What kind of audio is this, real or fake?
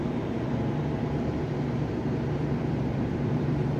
fake